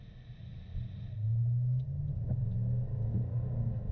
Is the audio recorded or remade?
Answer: recorded